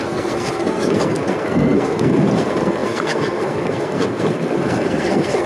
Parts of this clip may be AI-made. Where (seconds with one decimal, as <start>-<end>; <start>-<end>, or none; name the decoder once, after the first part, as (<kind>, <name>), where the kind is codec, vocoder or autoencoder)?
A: 0.0-5.5 (codec, SNAC)